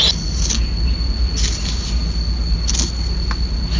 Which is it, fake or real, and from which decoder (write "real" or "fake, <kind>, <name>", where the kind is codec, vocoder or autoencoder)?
real